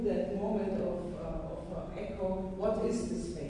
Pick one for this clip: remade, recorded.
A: recorded